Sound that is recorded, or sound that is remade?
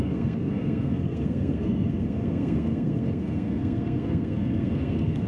remade